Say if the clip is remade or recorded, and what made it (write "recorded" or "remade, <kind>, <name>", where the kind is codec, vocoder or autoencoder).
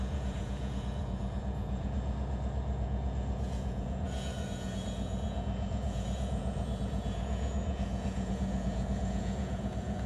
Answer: remade, vocoder, Vocos